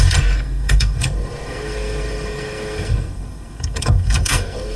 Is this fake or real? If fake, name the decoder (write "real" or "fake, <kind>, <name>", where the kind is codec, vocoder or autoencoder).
fake, codec, SNAC